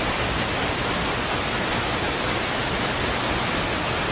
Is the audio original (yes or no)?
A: yes